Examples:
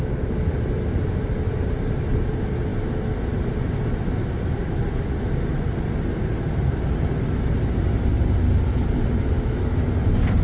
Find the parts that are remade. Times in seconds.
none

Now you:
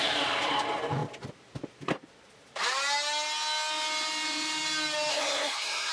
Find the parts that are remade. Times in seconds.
5.1-5.9 (codec, SNAC)